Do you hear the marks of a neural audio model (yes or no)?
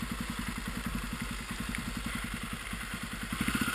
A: no